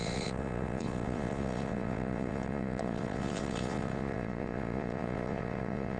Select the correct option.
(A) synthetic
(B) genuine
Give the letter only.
A